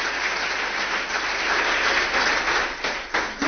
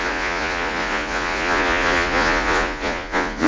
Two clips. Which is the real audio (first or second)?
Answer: first